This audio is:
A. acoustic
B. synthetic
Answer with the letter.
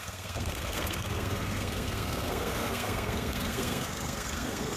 B